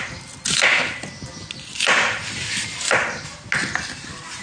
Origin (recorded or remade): recorded